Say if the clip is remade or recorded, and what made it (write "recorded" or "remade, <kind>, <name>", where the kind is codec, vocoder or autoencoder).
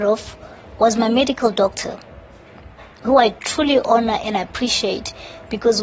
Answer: recorded